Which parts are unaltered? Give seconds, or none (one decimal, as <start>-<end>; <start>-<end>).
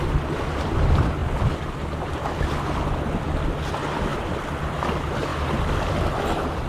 0.0-4.1; 4.7-6.7